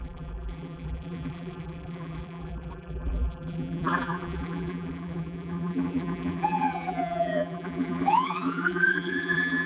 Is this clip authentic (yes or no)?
no